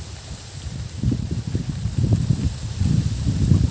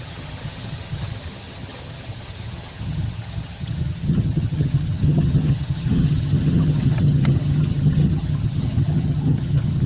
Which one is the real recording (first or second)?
first